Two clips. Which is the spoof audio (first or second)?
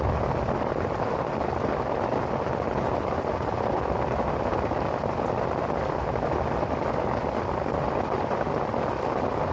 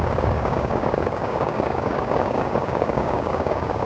second